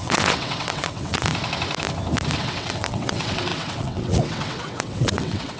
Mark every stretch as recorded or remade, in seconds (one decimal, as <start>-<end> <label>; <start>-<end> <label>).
0.0-1.3 remade; 1.3-2.4 recorded; 2.4-5.6 remade